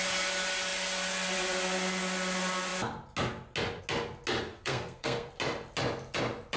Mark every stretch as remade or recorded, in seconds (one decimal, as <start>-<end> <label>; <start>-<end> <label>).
0.0-4.5 recorded; 4.5-5.3 remade; 5.3-6.6 recorded